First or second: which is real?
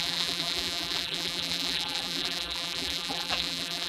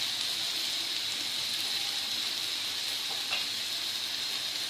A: second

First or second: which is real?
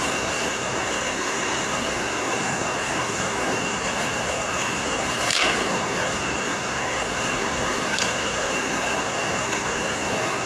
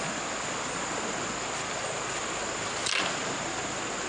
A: second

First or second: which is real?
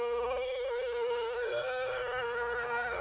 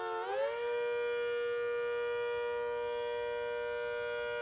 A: second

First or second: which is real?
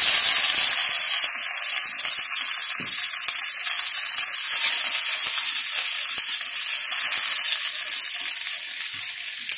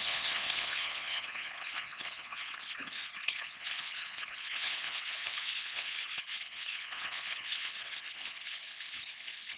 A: first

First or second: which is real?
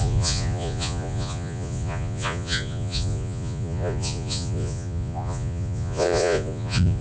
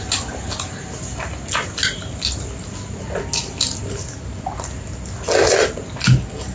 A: second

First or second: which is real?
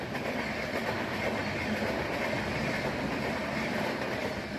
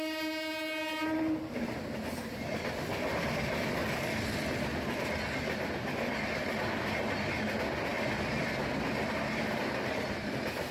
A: second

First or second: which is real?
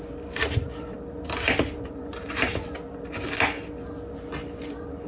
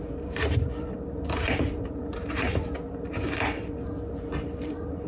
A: first